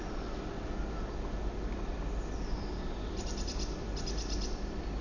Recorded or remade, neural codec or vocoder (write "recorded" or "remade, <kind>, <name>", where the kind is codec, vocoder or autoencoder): recorded